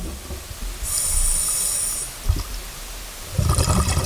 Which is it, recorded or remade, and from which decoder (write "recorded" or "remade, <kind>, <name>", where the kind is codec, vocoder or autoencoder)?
recorded